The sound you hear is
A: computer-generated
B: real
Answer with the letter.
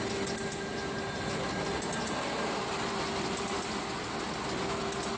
B